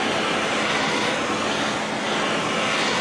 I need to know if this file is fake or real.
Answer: real